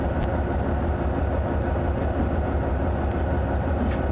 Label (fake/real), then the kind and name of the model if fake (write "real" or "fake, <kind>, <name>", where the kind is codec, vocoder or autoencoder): real